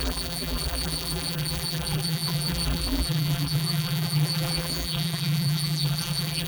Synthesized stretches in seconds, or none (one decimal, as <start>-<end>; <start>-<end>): 0.0-6.5